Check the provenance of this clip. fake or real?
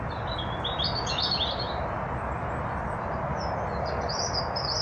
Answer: real